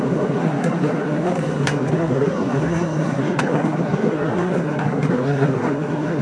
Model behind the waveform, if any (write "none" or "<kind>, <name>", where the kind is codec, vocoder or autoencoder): codec, SNAC